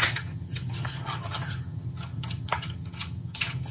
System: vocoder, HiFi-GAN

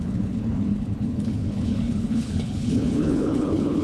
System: codec, HILCodec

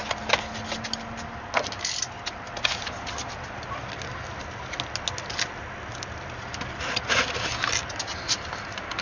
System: none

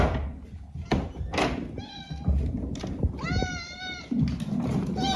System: none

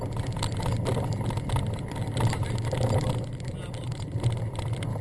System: none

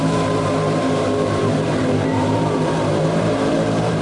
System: vocoder, BigVGAN v2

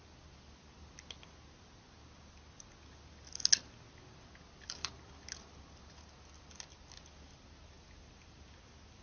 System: none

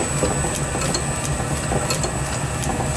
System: none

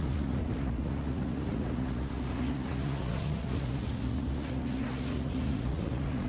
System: vocoder, Vocos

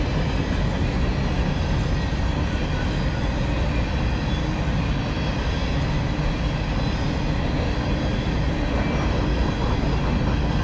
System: none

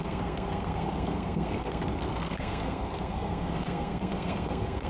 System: codec, SNAC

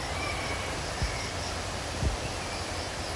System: vocoder, BigVGAN v2